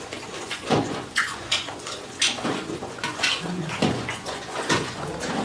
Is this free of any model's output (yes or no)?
no